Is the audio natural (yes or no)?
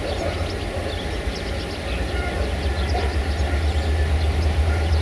yes